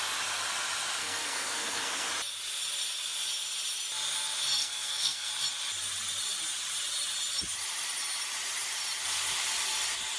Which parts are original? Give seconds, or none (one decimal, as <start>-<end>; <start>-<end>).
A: 0.0-1.0; 2.1-4.6; 5.3-10.2